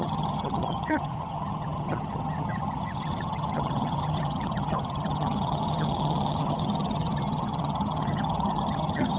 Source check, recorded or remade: remade